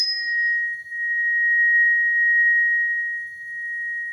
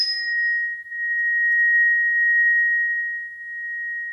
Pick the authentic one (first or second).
second